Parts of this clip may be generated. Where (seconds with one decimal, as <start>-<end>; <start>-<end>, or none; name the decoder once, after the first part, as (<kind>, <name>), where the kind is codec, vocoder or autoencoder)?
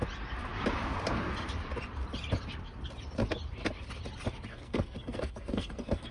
4.5-6.1 (codec, SNAC)